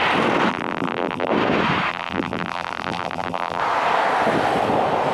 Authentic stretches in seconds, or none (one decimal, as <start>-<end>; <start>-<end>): 0.0-0.5; 1.3-1.9; 3.6-5.1

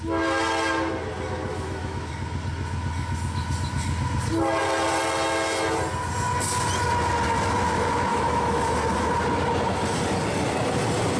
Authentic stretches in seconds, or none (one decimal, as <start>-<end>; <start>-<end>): 0.0-1.5; 2.1-8.1; 8.6-11.2

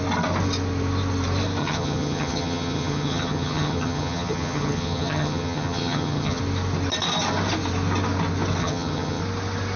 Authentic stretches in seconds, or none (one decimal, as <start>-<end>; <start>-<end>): 0.0-1.6; 6.4-8.6; 9.2-9.8